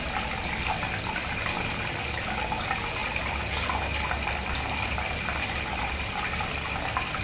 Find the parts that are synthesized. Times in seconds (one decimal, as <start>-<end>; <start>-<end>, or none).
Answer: none